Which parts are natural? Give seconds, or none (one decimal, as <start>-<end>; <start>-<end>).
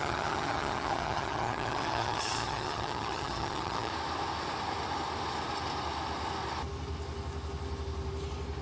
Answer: 3.9-8.6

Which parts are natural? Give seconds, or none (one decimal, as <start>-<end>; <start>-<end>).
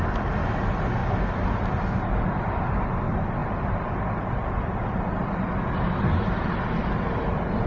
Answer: 0.0-7.7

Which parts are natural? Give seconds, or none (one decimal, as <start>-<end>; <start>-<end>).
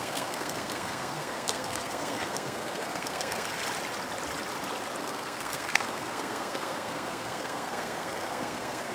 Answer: 3.6-5.0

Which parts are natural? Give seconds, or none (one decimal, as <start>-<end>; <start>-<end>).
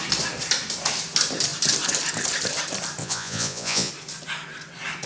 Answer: 0.0-3.0; 3.9-5.1